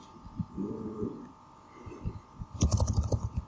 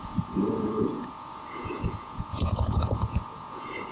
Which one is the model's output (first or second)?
second